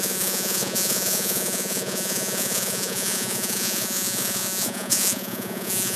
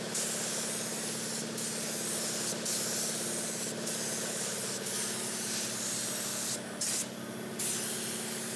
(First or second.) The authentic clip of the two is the second